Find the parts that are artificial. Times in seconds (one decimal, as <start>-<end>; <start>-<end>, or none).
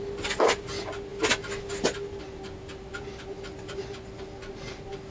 none